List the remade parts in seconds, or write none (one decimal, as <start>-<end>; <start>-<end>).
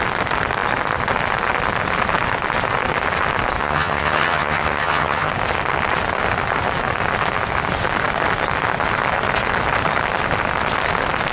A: 3.6-5.3